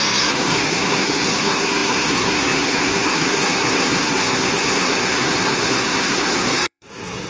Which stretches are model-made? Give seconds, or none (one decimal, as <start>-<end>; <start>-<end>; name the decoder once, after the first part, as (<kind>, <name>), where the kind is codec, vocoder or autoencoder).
0.0-7.3 (codec, SNAC)